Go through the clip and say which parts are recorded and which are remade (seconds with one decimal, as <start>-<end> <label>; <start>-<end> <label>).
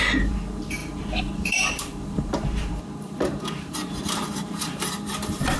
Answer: 0.0-5.6 remade